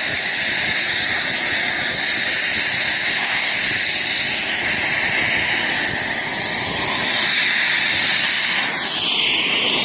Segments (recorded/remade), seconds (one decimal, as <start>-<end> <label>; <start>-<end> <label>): 0.0-3.1 recorded; 3.1-3.7 remade; 3.7-9.8 recorded